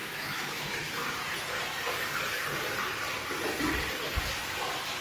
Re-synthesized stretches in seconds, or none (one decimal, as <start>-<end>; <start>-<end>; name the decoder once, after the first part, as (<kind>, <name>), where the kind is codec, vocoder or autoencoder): 0.0-0.6 (autoencoder, DAC-VAE)